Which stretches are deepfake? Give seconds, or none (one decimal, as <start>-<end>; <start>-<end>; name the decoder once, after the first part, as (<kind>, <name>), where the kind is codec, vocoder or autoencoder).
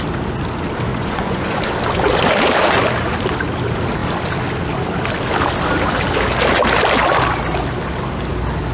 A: 0.9-1.6 (vocoder, Vocos)